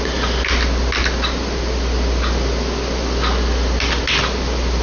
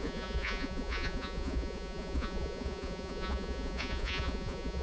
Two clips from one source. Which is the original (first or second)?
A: first